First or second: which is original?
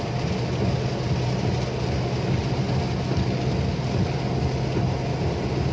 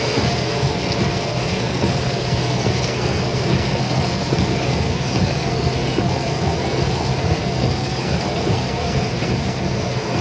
first